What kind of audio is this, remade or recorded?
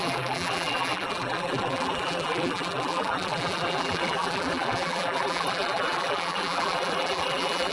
remade